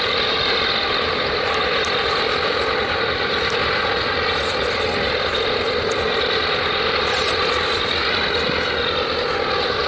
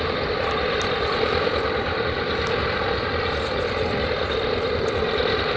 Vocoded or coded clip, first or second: second